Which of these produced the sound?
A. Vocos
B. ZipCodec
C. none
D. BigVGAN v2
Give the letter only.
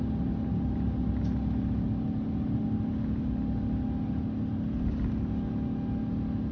C